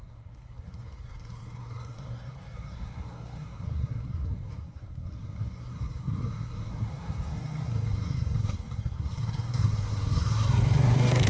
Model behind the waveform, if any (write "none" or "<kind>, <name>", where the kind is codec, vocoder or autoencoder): codec, SNAC